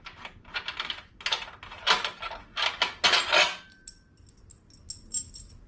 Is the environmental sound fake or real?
real